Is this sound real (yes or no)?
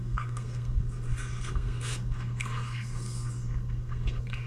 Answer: no